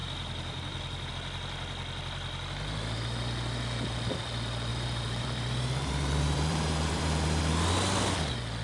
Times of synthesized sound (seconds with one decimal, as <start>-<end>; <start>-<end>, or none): 0.0-1.1; 4.7-7.4